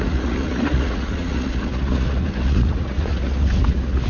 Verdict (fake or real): fake